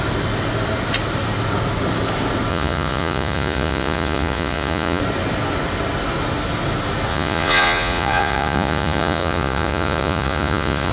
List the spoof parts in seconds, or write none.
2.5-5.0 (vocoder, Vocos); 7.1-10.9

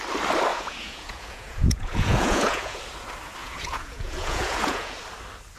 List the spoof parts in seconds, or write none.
0.5-2.8 (vocoder, Vocos); 3.4-5.0

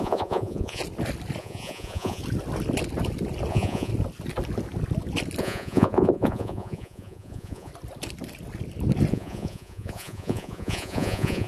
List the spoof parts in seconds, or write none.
0.0-0.8 (vocoder, Vocos); 1.4-2.2; 3.5-3.9; 5.4-7.7; 9.1-11.5

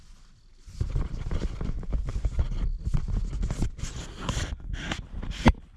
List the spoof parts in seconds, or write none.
none

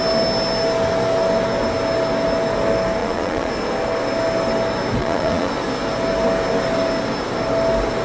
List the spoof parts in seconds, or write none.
3.0-3.5 (vocoder, Vocos); 5.0-5.5

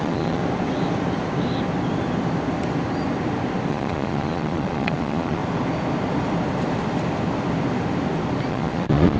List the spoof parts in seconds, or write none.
0.0-0.4 (vocoder, Vocos); 3.7-5.4; 8.5-9.2